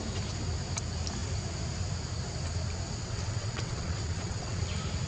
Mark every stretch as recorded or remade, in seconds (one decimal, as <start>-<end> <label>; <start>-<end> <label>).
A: 0.0-3.0 recorded; 3.0-4.6 remade; 4.6-5.1 recorded